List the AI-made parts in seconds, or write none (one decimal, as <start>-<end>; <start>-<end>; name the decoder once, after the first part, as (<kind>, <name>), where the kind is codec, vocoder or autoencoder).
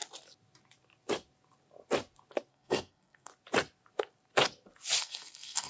2.5-3.3 (codec, SNAC); 5.0-5.7